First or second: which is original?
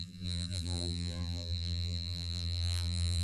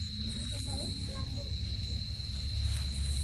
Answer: second